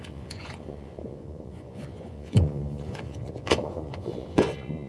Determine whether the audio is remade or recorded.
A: remade